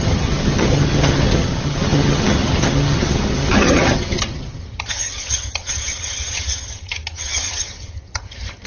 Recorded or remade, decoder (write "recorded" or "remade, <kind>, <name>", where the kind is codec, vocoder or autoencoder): remade, vocoder, HiFi-GAN